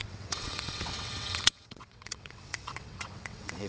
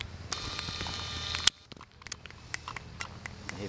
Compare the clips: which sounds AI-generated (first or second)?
first